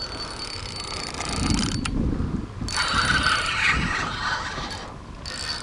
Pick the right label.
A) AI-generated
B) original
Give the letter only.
B